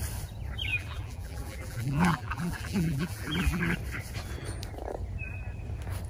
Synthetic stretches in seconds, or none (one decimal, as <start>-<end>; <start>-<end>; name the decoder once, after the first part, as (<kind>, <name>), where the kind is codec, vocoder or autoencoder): 0.7-3.6 (vocoder, BigVGAN v2)